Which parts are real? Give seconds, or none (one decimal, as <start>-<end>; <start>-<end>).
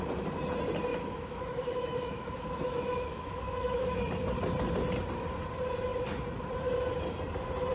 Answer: 0.0-0.9; 4.0-7.7